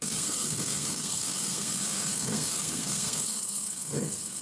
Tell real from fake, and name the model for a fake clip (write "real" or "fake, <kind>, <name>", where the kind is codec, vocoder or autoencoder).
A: fake, codec, SNAC